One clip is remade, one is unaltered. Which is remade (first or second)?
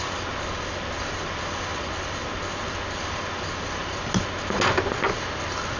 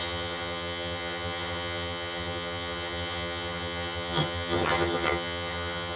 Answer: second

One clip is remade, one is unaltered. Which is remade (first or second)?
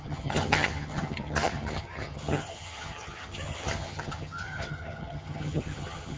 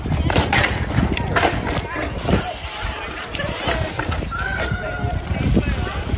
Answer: first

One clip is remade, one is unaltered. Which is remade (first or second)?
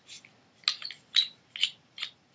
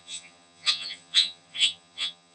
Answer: second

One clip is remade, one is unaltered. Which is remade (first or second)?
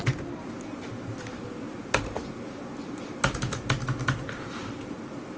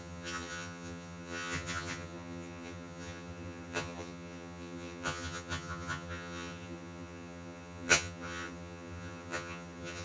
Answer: second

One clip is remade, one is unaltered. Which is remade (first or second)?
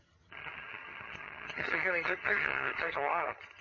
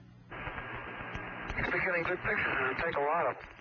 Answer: first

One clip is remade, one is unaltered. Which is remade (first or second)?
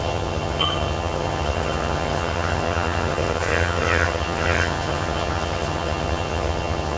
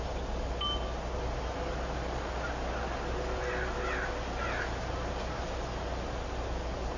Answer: first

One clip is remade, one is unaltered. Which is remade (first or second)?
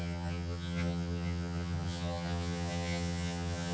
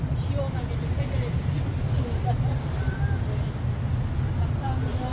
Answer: first